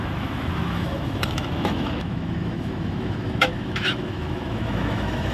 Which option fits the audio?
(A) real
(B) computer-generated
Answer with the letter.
B